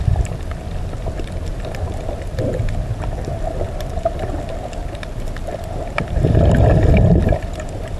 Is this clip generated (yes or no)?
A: no